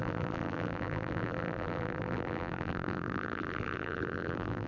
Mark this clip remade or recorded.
remade